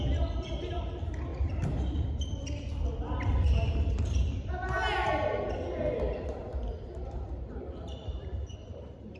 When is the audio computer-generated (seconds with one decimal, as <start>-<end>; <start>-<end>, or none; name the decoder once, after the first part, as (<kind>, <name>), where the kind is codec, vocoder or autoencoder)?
6.5-7.4 (vocoder, BigVGAN v2); 8.6-9.2

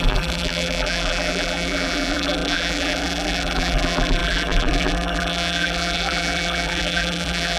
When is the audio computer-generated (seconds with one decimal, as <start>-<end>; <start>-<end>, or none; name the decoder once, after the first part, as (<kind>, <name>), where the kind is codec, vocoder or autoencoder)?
0.0-7.6 (vocoder, BigVGAN v2)

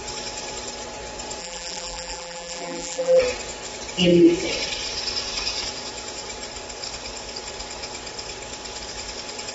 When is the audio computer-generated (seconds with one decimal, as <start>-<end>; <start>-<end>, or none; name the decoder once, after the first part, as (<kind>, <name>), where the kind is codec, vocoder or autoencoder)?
1.4-3.2 (vocoder, BigVGAN v2)

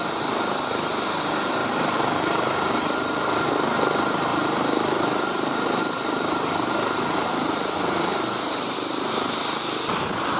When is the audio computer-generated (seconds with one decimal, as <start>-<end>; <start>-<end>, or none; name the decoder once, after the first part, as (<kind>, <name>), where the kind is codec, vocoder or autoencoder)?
1.6-3.5 (vocoder, BigVGAN v2); 4.3-9.1

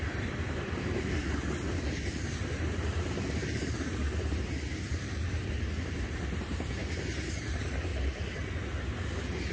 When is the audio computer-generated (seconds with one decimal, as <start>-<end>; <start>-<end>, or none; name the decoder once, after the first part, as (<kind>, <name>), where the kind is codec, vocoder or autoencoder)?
0.0-6.8 (vocoder, BigVGAN v2); 7.4-7.9

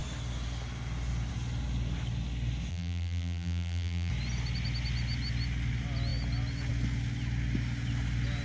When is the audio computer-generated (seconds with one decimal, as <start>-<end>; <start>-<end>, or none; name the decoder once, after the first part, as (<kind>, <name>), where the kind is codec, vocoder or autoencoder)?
2.7-4.1 (vocoder, BigVGAN v2)

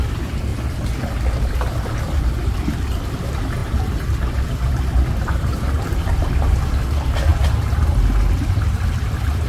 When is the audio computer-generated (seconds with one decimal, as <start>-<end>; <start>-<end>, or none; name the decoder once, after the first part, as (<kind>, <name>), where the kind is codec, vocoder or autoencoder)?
0.0-0.5 (vocoder, BigVGAN v2); 3.0-7.3; 8.4-9.5